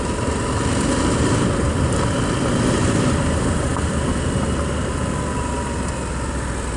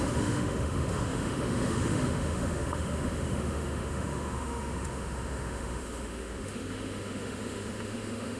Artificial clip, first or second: second